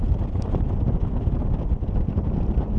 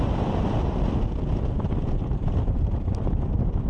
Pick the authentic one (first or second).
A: first